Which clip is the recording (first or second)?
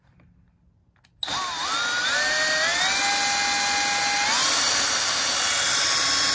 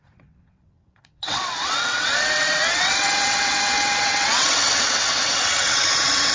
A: first